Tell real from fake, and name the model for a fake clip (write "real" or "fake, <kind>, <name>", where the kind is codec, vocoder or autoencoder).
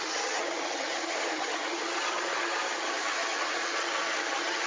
fake, vocoder, HiFi-GAN